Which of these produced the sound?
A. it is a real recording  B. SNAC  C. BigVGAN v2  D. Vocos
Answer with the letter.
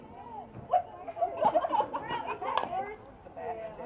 A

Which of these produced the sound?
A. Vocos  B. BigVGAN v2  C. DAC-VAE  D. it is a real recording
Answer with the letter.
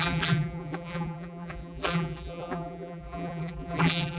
B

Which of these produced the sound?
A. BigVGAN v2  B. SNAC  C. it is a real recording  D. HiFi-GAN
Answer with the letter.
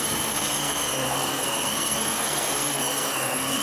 B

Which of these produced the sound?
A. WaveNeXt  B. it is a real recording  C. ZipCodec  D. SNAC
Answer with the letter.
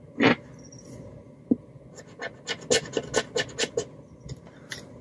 B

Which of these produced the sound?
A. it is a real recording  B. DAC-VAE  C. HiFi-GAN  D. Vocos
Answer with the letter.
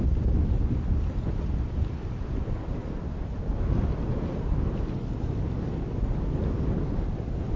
A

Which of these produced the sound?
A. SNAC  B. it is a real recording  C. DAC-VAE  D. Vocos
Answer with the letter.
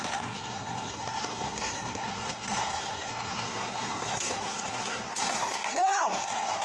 A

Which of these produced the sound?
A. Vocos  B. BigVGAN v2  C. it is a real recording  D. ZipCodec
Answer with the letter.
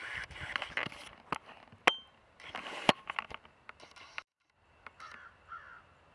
C